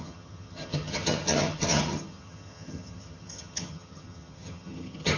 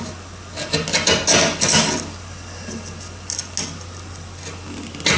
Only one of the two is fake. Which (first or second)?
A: first